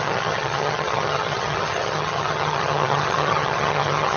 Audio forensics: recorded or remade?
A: remade